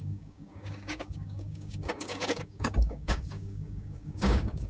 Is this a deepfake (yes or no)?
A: yes